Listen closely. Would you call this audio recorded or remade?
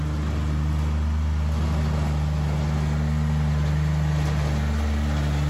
recorded